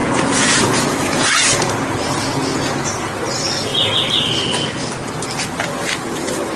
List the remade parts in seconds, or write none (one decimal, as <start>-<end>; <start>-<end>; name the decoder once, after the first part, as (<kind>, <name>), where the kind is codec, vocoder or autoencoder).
0.0-1.4 (vocoder, Vocos)